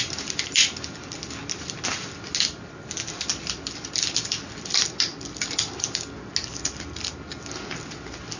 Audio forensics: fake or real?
real